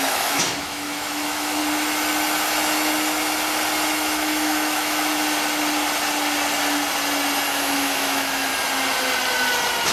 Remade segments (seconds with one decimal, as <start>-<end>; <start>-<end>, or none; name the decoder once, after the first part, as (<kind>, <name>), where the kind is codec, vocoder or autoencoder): 0.0-1.6 (autoencoder, DAC-VAE); 3.9-5.1; 7.5-8.5